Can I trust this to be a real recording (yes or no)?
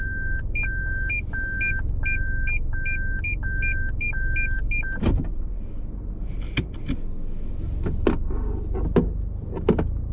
yes